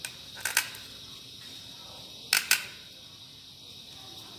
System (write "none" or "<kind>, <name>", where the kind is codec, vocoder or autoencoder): none